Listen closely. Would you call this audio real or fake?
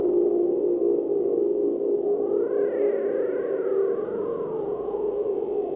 real